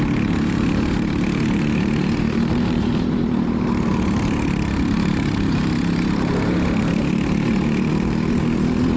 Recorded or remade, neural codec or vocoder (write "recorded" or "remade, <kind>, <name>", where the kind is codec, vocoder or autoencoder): remade, vocoder, BigVGAN v2